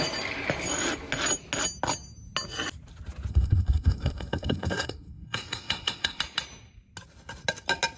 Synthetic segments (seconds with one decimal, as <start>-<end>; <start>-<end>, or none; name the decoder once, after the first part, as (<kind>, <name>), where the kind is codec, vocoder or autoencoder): 3.3-6.2 (codec, SNAC)